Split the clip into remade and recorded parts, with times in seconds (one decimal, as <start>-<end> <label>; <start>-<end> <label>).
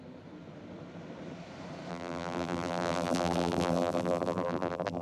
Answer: 0.0-1.9 recorded; 1.9-5.0 remade